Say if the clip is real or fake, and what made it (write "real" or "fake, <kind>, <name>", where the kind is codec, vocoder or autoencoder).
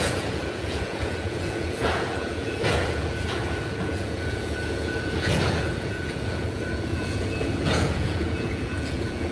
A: fake, vocoder, Vocos